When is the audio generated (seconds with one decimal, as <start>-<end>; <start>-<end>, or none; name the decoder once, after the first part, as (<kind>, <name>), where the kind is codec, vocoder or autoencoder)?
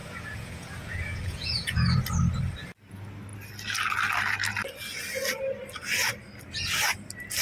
0.0-2.0 (vocoder, Vocos)